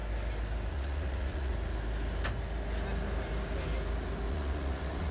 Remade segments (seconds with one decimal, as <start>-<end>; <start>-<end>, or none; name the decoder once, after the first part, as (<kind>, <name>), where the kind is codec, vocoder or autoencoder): 0.7-1.5 (vocoder, Vocos); 4.3-5.1